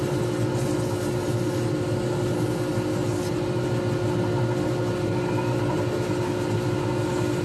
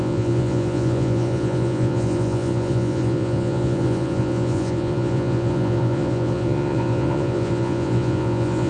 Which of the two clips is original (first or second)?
first